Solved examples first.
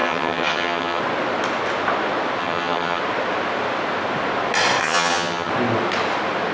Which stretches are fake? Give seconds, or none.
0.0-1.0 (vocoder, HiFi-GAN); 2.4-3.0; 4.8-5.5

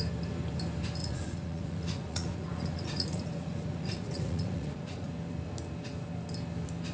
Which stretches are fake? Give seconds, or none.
1.0-5.1 (vocoder, Vocos)

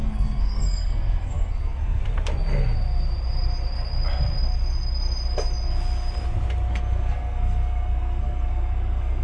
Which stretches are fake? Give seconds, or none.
0.0-2.0 (codec, SNAC); 6.7-9.2

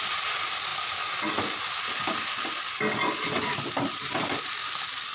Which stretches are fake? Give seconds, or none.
none

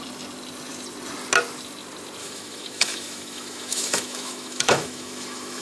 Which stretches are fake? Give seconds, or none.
2.2-5.6 (autoencoder, DAC-VAE)

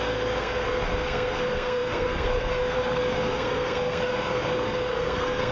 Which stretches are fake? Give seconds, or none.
0.0-5.5 (codec, SNAC)

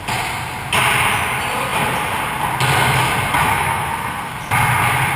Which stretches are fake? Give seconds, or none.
3.5-4.3 (codec, SNAC)